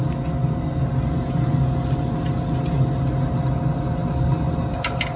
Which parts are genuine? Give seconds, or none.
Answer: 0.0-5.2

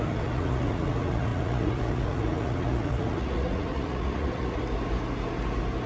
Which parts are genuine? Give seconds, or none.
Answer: 4.6-5.9

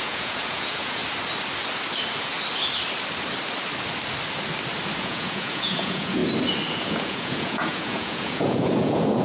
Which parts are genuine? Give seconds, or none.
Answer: 1.0-5.0; 6.2-6.7

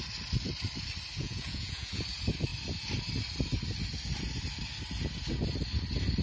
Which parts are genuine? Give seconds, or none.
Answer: 0.0-1.2; 2.0-6.2

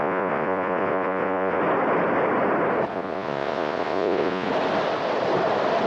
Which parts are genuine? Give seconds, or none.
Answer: 1.6-2.9; 4.5-5.9